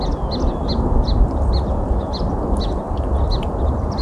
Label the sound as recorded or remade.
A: recorded